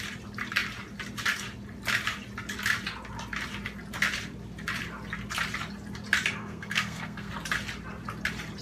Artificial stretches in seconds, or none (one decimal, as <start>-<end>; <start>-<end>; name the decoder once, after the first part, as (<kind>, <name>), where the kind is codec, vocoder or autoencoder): 6.4-7.3 (codec, SNAC)